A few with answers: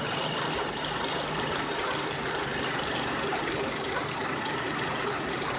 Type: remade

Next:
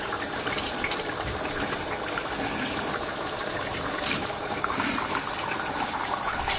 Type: remade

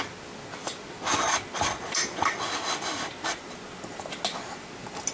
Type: recorded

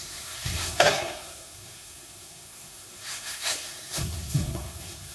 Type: remade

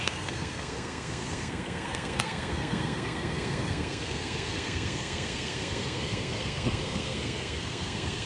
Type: remade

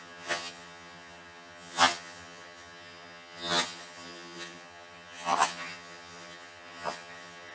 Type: remade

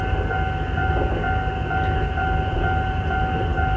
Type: recorded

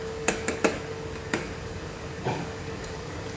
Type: remade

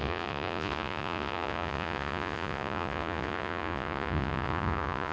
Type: remade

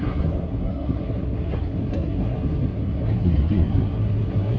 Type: remade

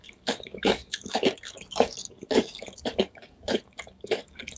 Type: remade